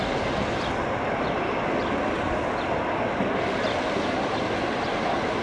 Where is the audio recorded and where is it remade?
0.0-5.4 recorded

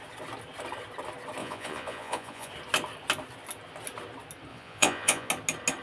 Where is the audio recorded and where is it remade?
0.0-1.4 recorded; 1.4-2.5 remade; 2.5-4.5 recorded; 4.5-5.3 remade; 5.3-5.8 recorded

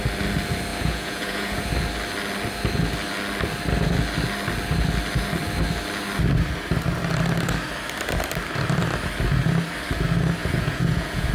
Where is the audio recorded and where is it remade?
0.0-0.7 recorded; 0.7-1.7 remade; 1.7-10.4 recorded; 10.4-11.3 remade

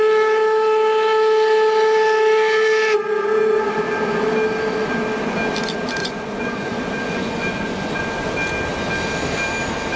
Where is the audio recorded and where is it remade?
0.0-6.0 recorded; 6.0-8.3 remade; 8.3-10.0 recorded

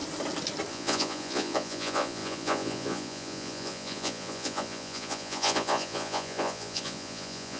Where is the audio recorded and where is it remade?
0.0-0.7 recorded; 0.7-7.6 remade